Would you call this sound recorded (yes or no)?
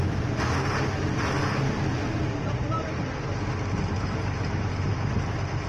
yes